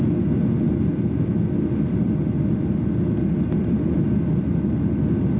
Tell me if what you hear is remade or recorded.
recorded